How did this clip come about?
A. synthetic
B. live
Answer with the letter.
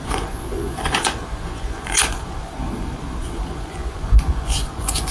A